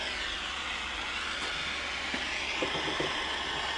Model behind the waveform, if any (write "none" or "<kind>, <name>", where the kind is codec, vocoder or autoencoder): none